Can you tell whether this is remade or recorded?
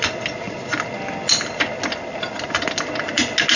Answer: recorded